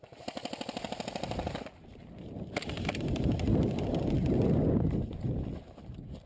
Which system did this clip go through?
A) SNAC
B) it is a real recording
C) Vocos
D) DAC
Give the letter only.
B